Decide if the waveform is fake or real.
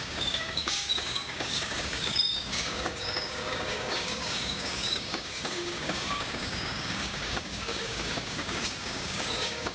fake